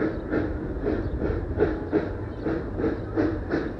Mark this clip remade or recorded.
recorded